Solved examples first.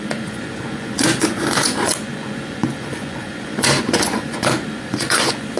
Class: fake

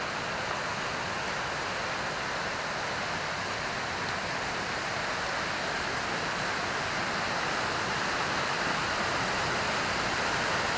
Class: real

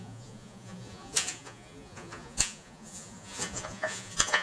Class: fake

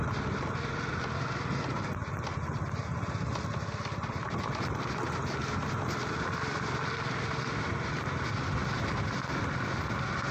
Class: real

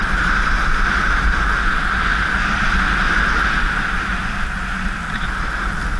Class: real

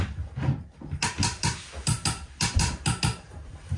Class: real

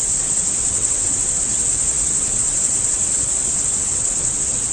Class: fake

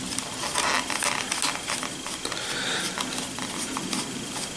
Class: real